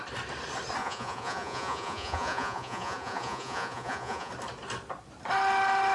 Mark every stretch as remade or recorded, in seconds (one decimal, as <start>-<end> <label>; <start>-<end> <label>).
0.0-0.8 recorded; 0.8-4.3 remade; 4.3-5.9 recorded

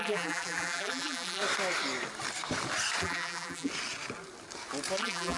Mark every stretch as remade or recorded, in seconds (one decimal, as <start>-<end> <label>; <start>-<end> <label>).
0.0-1.4 remade; 1.4-3.0 recorded; 3.0-3.7 remade; 3.7-5.0 recorded; 5.0-5.4 remade

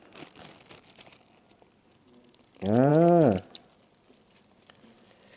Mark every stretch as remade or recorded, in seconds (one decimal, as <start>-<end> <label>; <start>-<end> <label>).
0.0-5.4 recorded

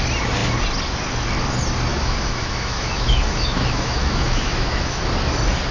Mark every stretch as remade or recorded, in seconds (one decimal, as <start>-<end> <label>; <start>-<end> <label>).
0.0-1.9 recorded; 1.9-5.0 remade; 5.0-5.7 recorded

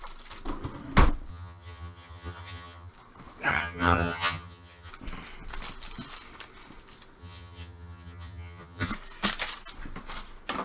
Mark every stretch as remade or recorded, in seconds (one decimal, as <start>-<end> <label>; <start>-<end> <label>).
0.0-1.3 recorded; 1.3-2.9 remade; 2.9-3.5 recorded; 3.5-4.9 remade; 4.9-7.2 recorded; 7.2-8.9 remade; 8.9-10.6 recorded

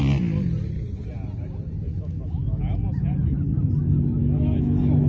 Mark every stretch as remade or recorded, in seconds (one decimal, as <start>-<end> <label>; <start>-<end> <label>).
0.0-1.9 recorded; 1.9-2.6 remade; 2.6-4.2 recorded; 4.2-5.1 remade

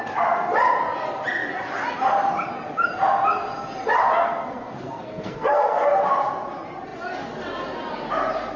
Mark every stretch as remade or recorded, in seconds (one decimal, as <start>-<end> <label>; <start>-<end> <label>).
0.0-4.2 recorded; 4.2-5.9 remade; 5.9-8.6 recorded

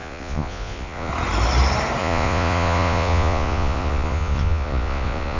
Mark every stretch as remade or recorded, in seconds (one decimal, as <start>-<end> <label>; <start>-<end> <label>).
0.0-1.1 remade; 1.1-2.0 recorded; 2.0-5.4 remade